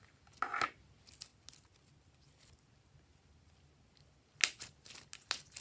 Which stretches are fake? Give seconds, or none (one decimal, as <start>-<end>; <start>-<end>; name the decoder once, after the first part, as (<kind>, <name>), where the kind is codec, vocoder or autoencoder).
none